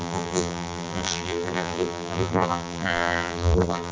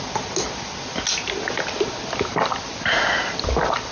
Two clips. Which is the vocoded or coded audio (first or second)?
first